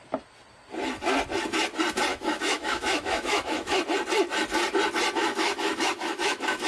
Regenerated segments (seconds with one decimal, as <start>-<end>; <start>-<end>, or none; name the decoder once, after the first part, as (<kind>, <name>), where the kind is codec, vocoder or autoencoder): 2.1-3.8 (autoencoder, DAC-VAE); 5.2-6.7